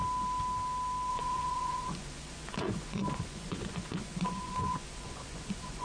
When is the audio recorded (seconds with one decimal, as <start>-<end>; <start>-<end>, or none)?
0.0-1.1